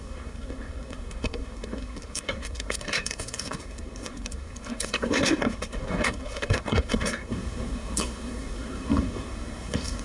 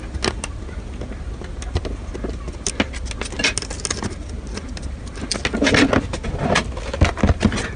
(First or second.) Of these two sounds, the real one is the second